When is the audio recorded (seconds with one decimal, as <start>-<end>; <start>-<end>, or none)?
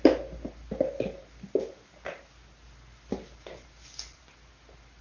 0.0-5.0